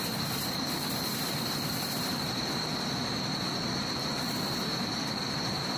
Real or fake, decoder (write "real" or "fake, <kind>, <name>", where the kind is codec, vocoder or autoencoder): fake, vocoder, BigVGAN v2